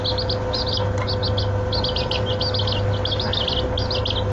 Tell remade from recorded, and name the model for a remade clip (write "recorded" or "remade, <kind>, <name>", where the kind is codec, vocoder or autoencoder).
recorded